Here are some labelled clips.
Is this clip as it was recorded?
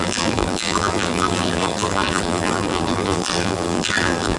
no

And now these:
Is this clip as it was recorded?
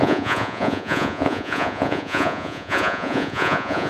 no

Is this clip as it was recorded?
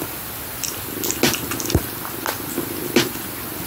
yes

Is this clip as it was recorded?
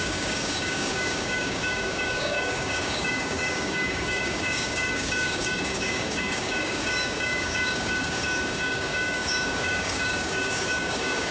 no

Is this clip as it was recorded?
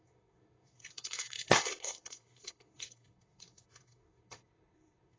no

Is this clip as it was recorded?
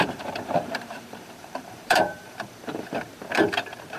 no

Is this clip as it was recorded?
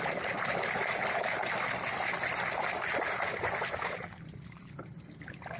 yes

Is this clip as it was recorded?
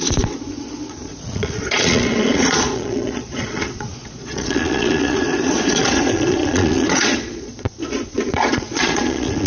no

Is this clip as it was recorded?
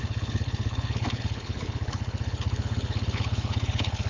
no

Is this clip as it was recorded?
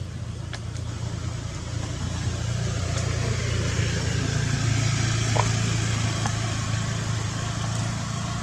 yes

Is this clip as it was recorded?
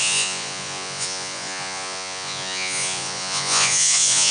no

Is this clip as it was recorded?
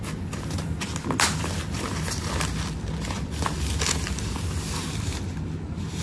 yes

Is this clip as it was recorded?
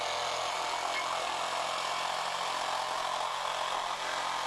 yes